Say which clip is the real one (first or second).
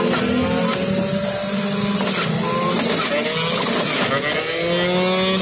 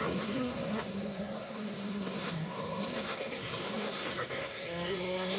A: first